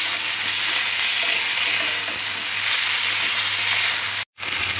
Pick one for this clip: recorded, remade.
recorded